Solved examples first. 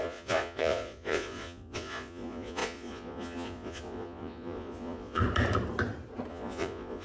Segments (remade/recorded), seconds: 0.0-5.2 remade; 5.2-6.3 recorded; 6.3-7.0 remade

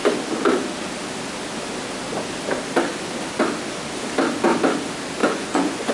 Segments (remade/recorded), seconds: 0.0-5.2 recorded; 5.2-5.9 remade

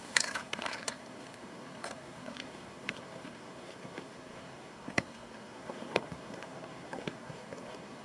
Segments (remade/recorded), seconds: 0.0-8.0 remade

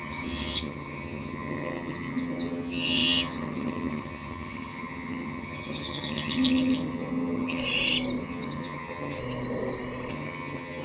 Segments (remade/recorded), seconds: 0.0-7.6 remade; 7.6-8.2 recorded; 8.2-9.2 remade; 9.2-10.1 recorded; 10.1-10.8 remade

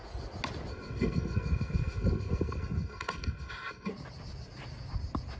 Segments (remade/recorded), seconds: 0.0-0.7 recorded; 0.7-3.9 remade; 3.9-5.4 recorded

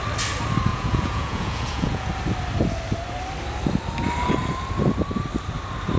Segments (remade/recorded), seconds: 0.0-0.7 recorded; 0.7-2.1 remade; 2.1-6.0 recorded

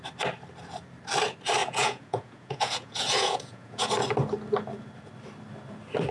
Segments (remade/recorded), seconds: 0.0-1.6 recorded; 1.6-3.9 remade; 3.9-6.1 recorded